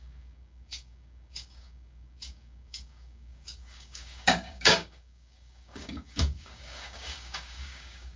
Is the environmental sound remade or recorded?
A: remade